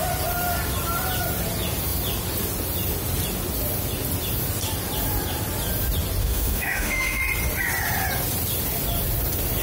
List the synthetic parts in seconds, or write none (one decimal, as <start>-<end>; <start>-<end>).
6.2-7.2